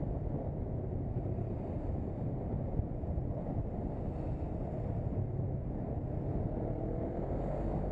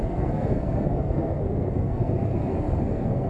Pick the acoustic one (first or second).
first